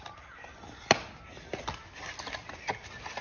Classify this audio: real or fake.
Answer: real